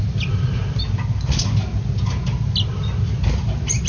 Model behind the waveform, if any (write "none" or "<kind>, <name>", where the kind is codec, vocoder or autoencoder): none